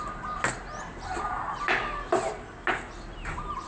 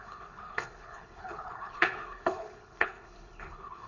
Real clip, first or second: first